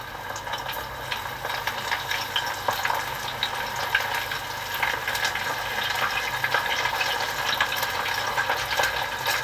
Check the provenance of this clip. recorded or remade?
recorded